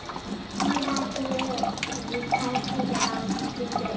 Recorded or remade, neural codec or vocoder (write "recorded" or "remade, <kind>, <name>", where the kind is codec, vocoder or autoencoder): recorded